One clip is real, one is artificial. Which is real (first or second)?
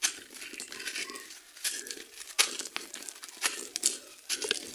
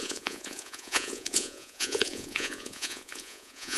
first